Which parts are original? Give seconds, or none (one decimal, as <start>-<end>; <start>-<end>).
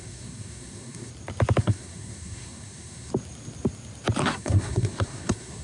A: 1.1-1.6; 3.1-4.2